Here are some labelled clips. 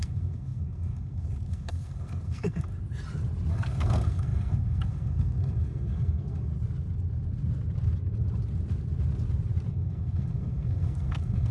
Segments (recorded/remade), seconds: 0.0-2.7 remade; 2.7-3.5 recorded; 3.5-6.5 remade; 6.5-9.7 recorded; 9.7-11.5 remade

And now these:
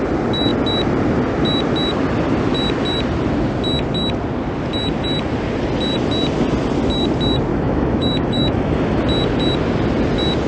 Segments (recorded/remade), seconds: 0.0-7.5 recorded; 7.5-9.0 remade; 9.0-10.5 recorded

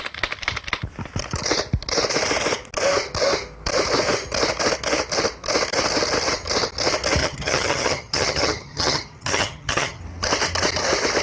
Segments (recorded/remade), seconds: 0.0-7.2 recorded; 7.2-10.0 remade; 10.0-11.2 recorded

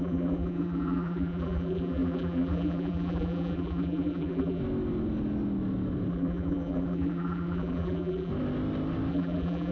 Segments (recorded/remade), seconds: 0.0-4.6 remade; 4.6-6.1 recorded; 6.1-8.3 remade; 8.3-9.1 recorded; 9.1-9.7 remade

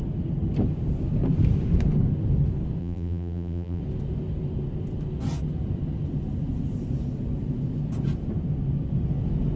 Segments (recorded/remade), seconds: 0.0-2.8 recorded; 2.8-3.8 remade; 3.8-9.6 recorded

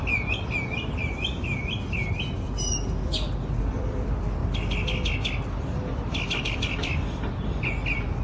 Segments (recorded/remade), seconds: 0.0-3.6 recorded; 3.6-4.4 remade; 4.4-6.4 recorded; 6.4-8.2 remade

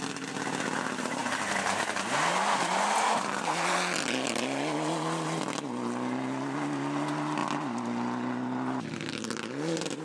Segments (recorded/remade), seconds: 0.0-10.0 recorded

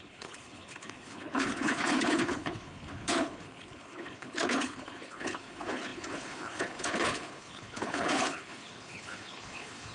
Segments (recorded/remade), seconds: 0.0-9.9 remade